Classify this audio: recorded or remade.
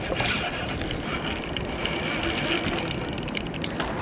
recorded